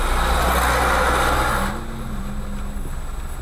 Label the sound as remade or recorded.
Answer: recorded